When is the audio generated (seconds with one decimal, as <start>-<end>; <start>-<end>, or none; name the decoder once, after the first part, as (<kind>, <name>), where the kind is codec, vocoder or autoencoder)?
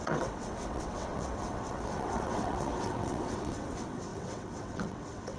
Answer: 0.0-5.4 (vocoder, WaveNeXt)